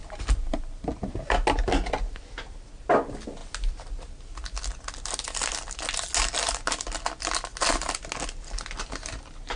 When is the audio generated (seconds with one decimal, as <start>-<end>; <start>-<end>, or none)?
none